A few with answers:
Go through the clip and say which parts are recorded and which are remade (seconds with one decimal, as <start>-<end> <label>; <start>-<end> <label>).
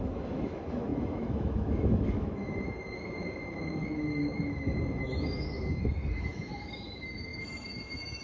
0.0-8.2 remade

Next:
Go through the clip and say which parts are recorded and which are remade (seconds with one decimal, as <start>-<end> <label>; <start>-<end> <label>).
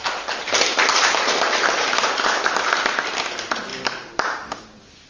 0.0-0.9 recorded; 0.9-2.0 remade; 2.0-3.7 recorded; 3.7-4.6 remade; 4.6-5.1 recorded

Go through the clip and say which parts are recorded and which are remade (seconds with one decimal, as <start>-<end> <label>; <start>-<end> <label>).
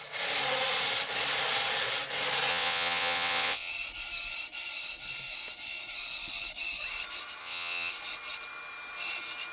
0.0-2.5 recorded; 2.5-3.7 remade; 3.7-7.4 recorded; 7.4-7.9 remade; 7.9-9.5 recorded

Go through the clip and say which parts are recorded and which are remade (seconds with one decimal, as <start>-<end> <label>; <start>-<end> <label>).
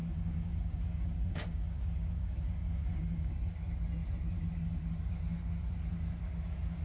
0.0-3.3 remade; 3.3-6.8 recorded